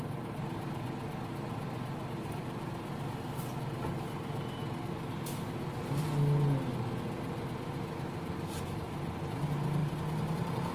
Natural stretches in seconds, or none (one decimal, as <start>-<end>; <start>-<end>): 0.0-10.7